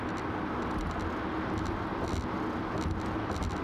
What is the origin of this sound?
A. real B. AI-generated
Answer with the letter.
A